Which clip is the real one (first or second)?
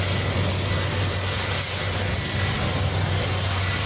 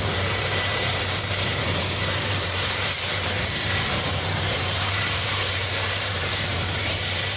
first